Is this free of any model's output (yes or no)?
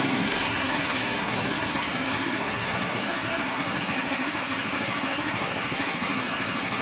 no